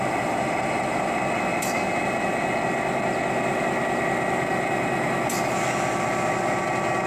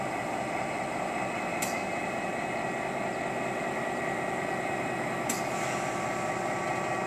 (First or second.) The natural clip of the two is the first